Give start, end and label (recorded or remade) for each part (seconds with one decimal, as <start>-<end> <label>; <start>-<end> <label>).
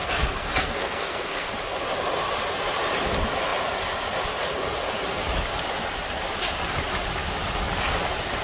0.0-1.5 remade; 1.5-8.4 recorded